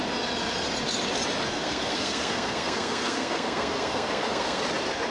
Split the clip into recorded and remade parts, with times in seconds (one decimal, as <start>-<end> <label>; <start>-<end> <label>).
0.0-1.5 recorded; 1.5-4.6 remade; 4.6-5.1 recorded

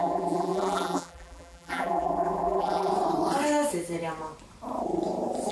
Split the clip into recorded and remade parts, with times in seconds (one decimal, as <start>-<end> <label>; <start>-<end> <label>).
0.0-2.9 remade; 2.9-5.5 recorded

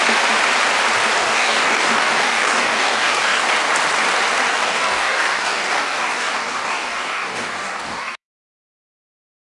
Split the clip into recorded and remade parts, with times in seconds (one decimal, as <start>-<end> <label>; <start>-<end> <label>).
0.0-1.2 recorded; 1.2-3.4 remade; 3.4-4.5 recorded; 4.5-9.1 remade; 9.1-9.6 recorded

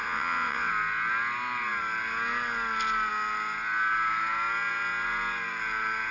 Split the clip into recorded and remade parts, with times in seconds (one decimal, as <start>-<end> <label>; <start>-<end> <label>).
0.0-0.7 remade; 0.7-6.1 recorded